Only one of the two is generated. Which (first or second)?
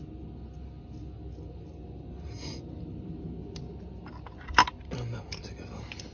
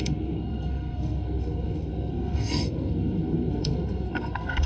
second